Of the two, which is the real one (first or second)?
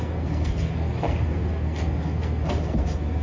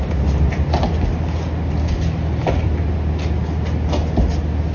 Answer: second